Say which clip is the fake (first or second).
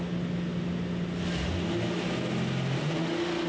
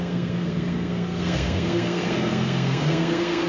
second